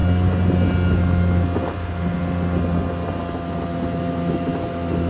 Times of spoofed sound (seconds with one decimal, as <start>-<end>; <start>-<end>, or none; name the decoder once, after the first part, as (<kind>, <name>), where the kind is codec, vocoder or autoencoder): none